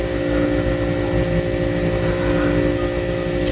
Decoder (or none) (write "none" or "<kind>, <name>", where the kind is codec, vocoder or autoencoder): none